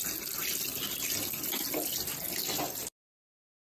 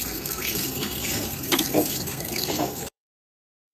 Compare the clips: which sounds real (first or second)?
first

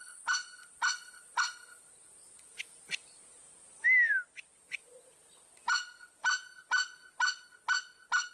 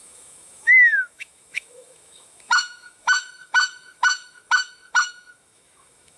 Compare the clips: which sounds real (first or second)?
first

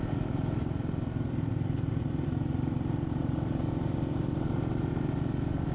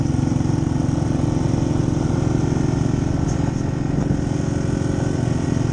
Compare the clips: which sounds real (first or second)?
second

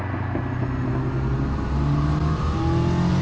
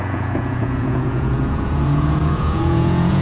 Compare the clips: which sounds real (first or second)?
first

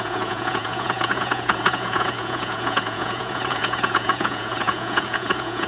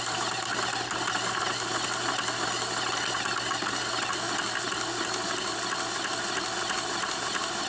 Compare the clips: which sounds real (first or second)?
second